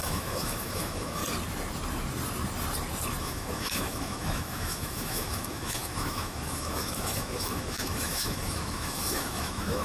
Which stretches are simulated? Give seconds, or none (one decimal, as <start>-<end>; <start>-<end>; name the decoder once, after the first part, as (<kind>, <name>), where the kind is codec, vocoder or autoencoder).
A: 0.0-1.2 (autoencoder, DAC-VAE); 3.2-9.8